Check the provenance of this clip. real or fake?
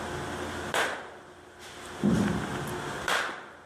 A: real